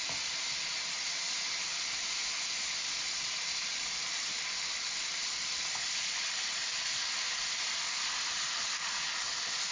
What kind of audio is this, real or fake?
real